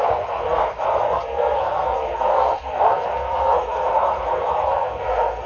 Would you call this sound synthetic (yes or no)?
yes